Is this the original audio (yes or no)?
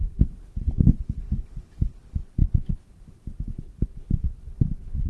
no